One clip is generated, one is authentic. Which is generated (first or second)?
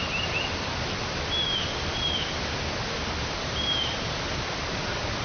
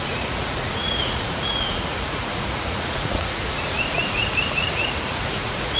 second